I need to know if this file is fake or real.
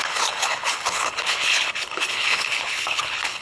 fake